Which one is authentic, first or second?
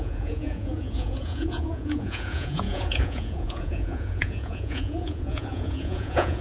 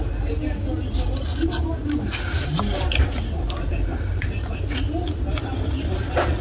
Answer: second